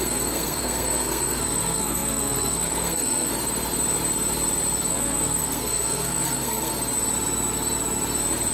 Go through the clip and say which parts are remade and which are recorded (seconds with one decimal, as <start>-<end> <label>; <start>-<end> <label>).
0.0-3.3 remade; 3.3-4.9 recorded; 4.9-6.7 remade; 6.7-8.5 recorded

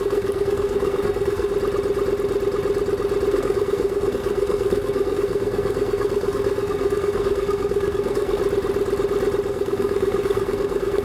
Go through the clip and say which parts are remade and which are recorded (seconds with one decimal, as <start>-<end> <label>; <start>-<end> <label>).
0.0-1.5 remade; 1.5-3.3 recorded; 3.3-8.4 remade; 8.4-9.5 recorded; 9.5-11.0 remade

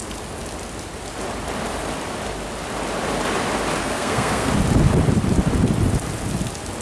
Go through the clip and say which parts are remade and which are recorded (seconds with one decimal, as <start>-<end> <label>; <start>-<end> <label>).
0.0-3.8 recorded; 3.8-4.5 remade; 4.5-6.8 recorded

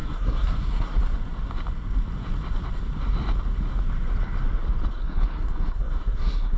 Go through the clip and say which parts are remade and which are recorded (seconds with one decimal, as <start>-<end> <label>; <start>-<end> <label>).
0.0-1.0 remade; 1.0-4.9 recorded; 4.9-6.6 remade

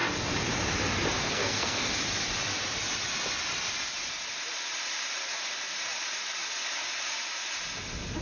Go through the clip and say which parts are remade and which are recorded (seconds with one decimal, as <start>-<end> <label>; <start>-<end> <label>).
0.0-1.2 recorded; 1.2-1.9 remade; 1.9-8.2 recorded

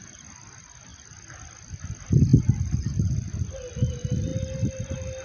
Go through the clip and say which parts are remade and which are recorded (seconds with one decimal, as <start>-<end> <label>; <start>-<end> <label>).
0.0-5.2 recorded